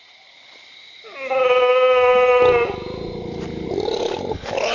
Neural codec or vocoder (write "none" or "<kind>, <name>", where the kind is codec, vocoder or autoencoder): none